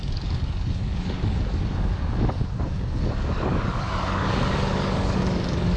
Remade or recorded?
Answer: remade